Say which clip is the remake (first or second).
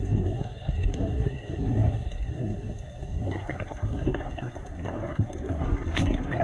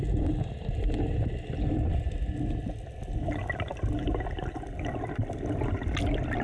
first